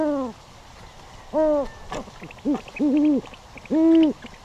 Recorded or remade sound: recorded